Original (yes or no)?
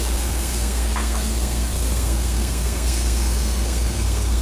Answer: no